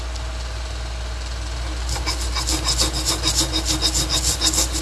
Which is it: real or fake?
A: real